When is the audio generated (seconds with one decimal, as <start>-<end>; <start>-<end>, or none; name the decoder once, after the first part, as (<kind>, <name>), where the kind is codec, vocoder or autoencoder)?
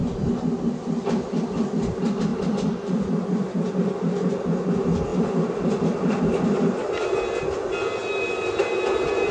none